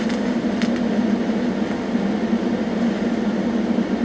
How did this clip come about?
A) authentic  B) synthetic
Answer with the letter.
A